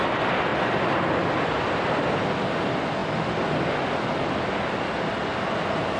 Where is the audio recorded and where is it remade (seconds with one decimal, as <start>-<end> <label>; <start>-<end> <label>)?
0.0-6.0 recorded

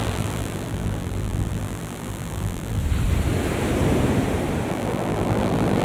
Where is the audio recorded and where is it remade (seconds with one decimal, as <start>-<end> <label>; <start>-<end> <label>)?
0.0-2.8 remade; 2.8-4.7 recorded; 4.7-5.8 remade

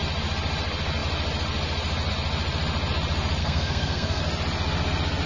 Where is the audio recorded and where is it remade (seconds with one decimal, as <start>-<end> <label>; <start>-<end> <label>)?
0.0-3.4 recorded; 3.4-4.2 remade; 4.2-5.3 recorded